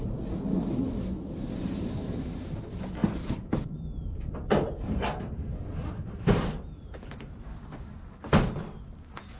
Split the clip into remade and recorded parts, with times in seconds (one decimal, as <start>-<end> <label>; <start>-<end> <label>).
0.0-3.0 recorded; 3.0-8.0 remade; 8.0-9.4 recorded